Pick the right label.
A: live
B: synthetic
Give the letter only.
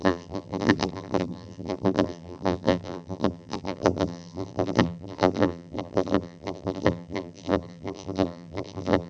B